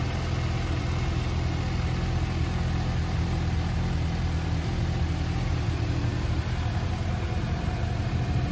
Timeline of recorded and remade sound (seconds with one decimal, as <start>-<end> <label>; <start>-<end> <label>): 0.0-8.5 recorded